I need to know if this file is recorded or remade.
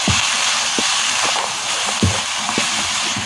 recorded